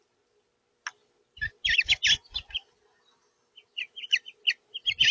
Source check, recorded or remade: recorded